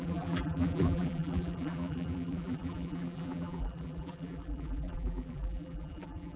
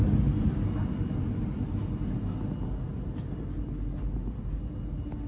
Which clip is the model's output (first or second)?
first